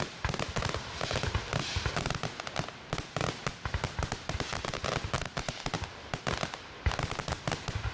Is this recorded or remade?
recorded